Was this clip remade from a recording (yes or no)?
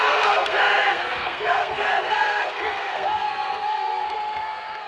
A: yes